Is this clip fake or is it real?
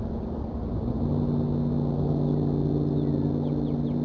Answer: real